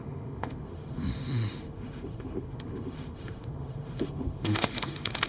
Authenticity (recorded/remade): remade